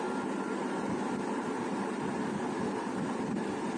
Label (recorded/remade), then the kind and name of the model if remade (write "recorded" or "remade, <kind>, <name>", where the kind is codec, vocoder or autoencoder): recorded